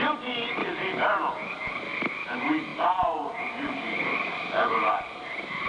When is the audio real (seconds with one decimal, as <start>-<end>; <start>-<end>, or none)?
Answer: 0.0-5.7